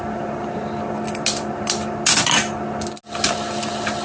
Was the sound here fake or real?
real